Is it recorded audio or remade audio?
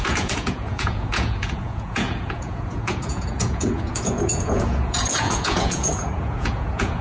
remade